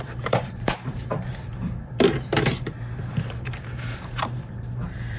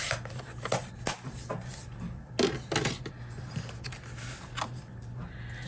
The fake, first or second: first